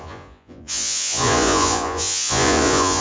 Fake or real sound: fake